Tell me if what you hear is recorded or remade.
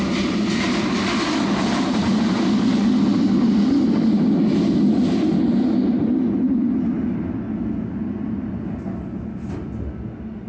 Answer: recorded